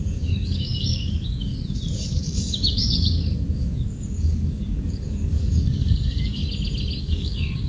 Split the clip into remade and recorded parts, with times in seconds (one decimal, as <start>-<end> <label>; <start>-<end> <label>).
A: 0.0-1.5 remade; 1.5-2.2 recorded; 2.2-6.4 remade; 6.4-7.0 recorded; 7.0-7.7 remade